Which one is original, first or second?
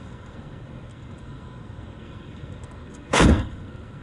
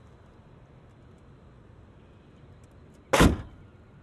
second